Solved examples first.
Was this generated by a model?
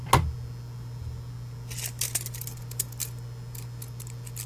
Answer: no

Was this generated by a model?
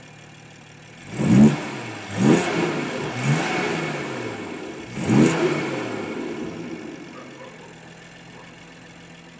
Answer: no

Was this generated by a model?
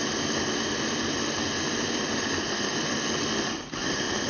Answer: no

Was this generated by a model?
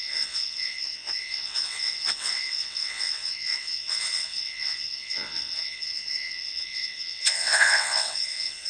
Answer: yes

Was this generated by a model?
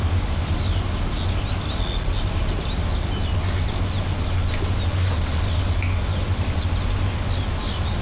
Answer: no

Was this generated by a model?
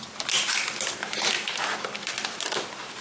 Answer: no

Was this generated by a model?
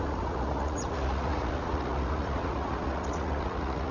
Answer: yes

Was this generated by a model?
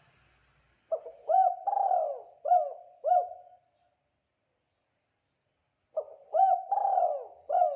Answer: no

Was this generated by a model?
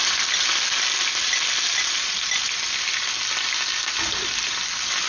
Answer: no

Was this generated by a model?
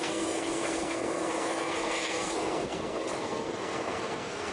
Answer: yes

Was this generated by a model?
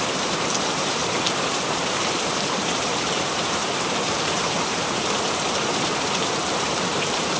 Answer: yes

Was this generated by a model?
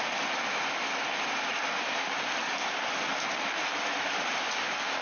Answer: no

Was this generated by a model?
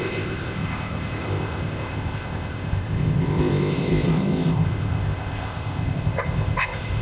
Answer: yes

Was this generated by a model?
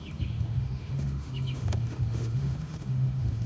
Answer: yes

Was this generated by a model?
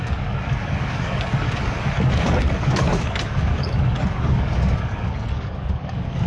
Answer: yes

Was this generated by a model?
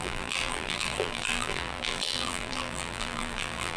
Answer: yes